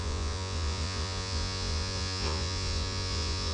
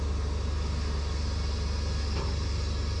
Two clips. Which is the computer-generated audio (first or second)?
first